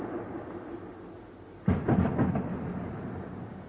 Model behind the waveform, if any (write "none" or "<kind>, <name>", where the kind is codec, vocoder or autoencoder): none